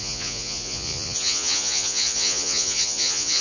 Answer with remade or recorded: remade